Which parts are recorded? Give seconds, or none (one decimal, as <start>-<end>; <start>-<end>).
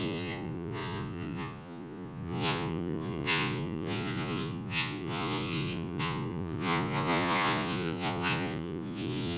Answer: none